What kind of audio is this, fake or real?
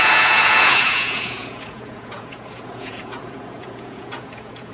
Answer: fake